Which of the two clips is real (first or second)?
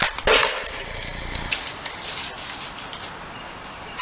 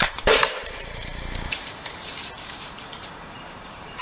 first